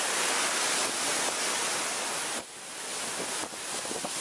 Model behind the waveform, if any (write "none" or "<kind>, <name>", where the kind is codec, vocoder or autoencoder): none